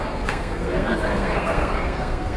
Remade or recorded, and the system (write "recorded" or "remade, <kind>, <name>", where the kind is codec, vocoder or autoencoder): remade, codec, SNAC